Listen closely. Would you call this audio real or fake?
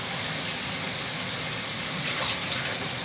real